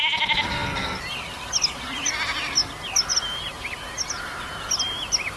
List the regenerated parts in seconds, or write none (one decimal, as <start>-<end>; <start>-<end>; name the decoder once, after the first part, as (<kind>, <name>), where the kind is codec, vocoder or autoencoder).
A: none